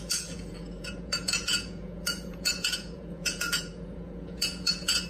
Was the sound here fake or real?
fake